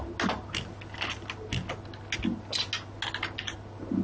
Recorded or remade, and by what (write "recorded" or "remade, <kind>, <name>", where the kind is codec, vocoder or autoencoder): recorded